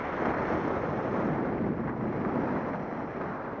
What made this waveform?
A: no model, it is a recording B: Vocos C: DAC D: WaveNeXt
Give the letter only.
A